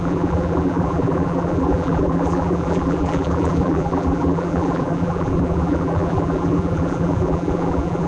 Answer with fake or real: fake